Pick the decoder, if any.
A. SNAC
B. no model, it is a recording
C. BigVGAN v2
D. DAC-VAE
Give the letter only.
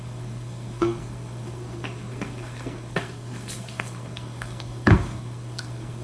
A